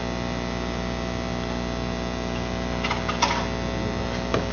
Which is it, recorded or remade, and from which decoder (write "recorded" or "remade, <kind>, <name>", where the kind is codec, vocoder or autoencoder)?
recorded